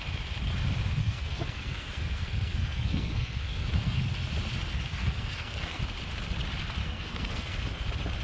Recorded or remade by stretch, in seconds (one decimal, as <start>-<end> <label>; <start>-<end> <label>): 0.0-1.0 recorded; 1.0-4.0 remade; 4.0-4.9 recorded; 4.9-5.8 remade; 5.8-6.8 recorded; 6.8-7.6 remade; 7.6-8.2 recorded